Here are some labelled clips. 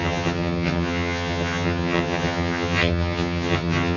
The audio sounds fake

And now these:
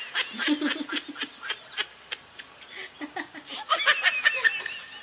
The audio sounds real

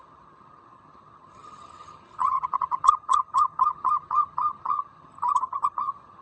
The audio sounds fake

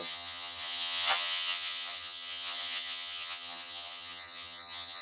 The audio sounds fake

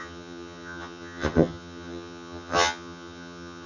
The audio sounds fake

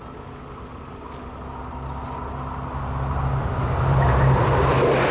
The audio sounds real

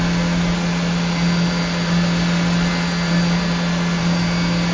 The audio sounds real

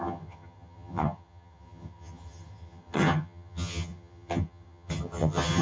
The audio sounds fake